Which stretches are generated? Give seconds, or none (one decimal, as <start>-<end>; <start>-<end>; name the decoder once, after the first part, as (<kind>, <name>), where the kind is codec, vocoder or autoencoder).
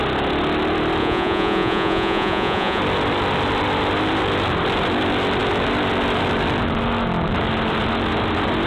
1.0-2.8 (vocoder, Vocos)